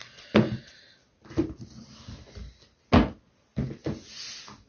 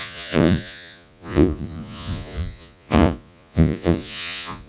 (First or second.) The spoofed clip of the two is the second